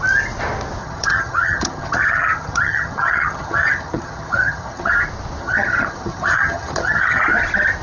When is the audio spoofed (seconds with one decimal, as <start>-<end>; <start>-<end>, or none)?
0.8-4.9; 5.4-7.2